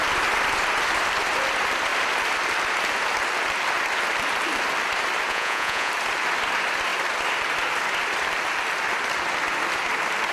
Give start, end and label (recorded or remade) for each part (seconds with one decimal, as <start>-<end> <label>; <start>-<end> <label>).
0.0-5.3 recorded; 5.3-5.9 remade; 5.9-10.3 recorded